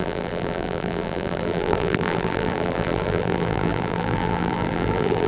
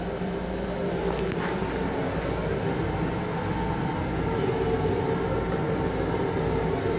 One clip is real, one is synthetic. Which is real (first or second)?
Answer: second